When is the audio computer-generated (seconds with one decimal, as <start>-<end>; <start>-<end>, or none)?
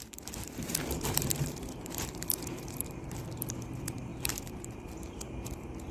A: 0.0-5.9